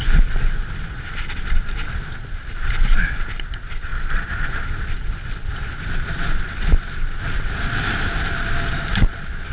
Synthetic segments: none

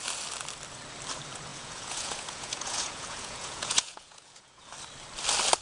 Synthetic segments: 1.5-4.6 (vocoder, Vocos)

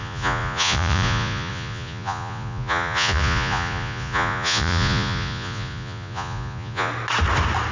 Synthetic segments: 0.0-6.9 (vocoder, Vocos)

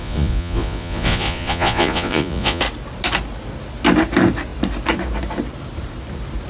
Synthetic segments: 0.0-2.6 (vocoder, Vocos)

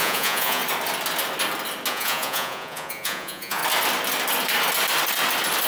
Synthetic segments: 0.0-0.6 (vocoder, Vocos); 1.9-3.6

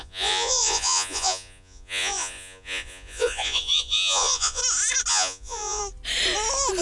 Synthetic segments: 0.0-4.6 (vocoder, Vocos); 5.1-5.8